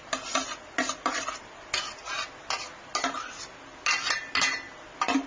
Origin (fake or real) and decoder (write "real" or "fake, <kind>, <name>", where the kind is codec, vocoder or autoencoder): real